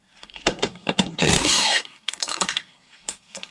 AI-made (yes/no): yes